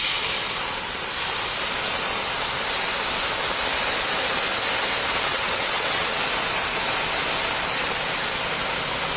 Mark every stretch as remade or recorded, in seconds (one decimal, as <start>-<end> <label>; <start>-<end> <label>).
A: 0.0-5.3 recorded; 5.3-6.2 remade; 6.2-9.2 recorded